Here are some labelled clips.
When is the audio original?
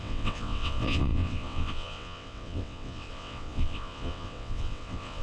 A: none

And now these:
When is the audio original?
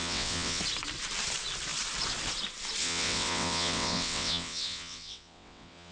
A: 0.6-2.8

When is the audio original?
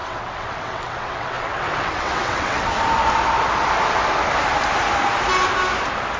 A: 2.7-6.2